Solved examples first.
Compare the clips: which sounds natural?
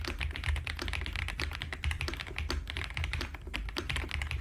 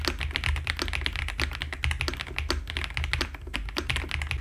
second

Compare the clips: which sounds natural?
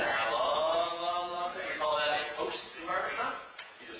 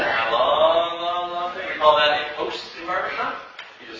second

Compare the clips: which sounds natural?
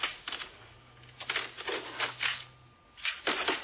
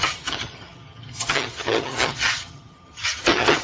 first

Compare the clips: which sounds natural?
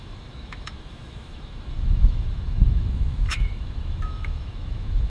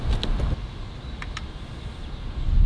second